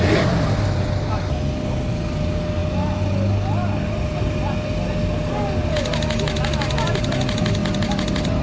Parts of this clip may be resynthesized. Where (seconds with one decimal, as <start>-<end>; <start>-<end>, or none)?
none